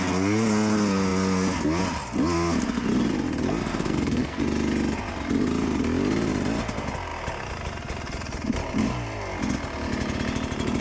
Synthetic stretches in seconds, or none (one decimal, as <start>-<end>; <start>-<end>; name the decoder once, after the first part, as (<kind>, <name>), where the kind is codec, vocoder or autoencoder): 3.7-4.4 (codec, SNAC)